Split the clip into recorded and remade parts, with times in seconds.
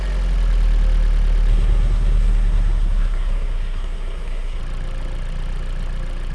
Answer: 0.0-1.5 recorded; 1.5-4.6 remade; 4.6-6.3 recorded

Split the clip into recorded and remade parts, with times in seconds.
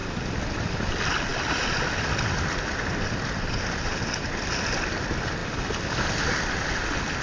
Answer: 0.0-7.2 recorded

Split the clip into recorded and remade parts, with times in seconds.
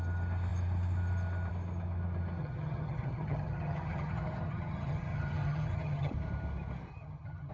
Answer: 0.0-2.4 recorded; 2.4-6.1 remade; 6.1-6.9 recorded; 6.9-7.5 remade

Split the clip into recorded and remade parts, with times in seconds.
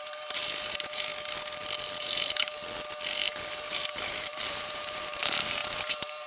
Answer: 0.0-1.1 remade; 1.1-2.0 recorded; 2.0-2.6 remade; 2.6-3.7 recorded; 3.7-6.3 remade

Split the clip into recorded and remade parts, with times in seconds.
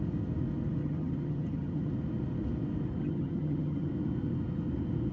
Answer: 0.0-0.8 recorded; 0.8-1.9 remade; 1.9-3.0 recorded; 3.0-3.9 remade; 3.9-5.1 recorded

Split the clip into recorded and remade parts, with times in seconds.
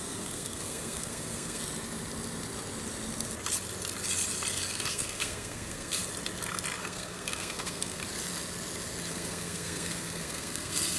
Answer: 0.0-1.6 remade; 1.6-4.7 recorded; 4.7-6.0 remade; 6.0-6.8 recorded; 6.8-8.0 remade; 8.0-9.1 recorded; 9.1-11.0 remade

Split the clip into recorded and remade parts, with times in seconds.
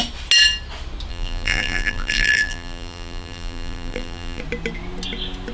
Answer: 0.0-1.1 recorded; 1.1-4.4 remade; 4.4-5.5 recorded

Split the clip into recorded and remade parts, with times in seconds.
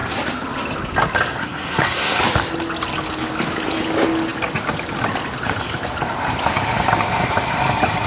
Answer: 0.0-1.4 recorded; 1.4-2.2 remade; 2.2-8.1 recorded